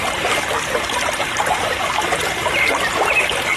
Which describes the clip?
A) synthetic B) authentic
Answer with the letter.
B